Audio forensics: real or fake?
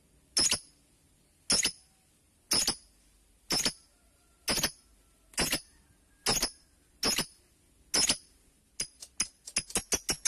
real